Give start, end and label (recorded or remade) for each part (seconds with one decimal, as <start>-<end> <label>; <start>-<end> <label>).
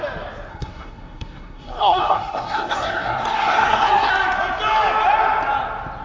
0.0-0.5 recorded; 0.5-4.1 remade; 4.1-6.0 recorded